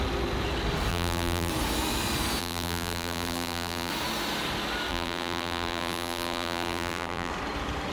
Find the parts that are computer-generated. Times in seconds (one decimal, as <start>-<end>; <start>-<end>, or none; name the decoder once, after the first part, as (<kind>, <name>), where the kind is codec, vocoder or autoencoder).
0.9-1.5 (vocoder, BigVGAN v2); 2.4-3.9; 4.9-7.3